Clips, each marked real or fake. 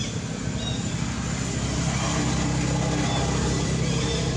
real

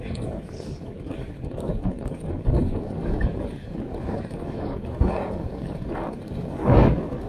fake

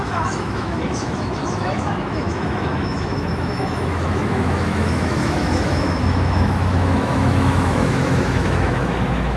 fake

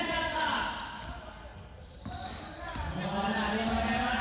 real